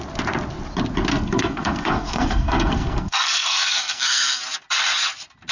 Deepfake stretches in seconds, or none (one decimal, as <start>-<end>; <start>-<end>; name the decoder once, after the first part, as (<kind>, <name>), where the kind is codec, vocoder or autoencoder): 1.1-4.4 (codec, SNAC)